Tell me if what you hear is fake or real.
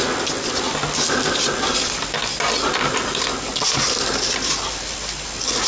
real